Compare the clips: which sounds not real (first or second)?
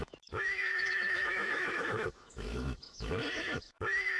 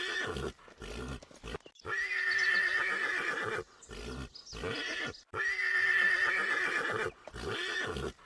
first